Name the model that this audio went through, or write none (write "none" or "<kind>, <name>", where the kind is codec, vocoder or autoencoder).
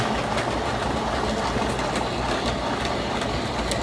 none